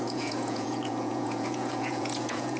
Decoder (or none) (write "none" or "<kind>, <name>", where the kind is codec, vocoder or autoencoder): vocoder, Vocos